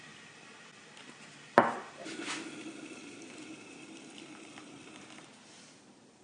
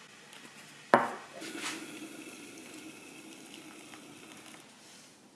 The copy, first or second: first